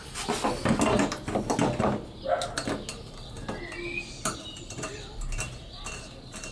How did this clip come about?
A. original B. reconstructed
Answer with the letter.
A